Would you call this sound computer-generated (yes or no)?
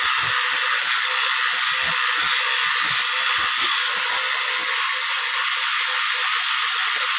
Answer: no